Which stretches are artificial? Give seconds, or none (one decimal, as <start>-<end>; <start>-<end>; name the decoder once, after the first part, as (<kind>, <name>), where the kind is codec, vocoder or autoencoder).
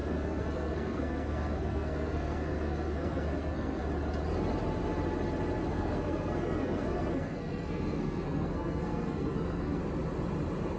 0.0-3.8 (codec, SNAC); 5.7-9.8